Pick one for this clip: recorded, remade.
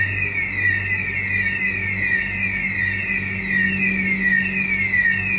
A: recorded